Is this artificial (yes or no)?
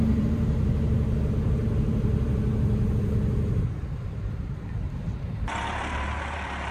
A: yes